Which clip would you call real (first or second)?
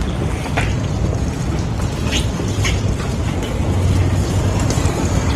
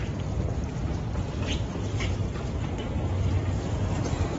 first